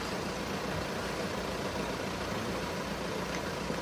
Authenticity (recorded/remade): recorded